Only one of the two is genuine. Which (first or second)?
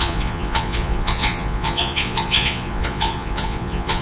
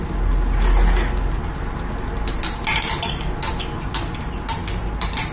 second